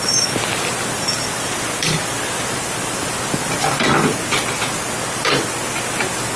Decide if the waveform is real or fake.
real